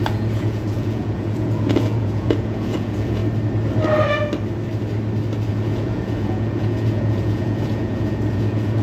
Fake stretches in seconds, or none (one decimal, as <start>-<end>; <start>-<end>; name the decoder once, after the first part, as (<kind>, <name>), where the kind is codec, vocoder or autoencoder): 0.0-3.2 (vocoder, Vocos); 5.5-8.8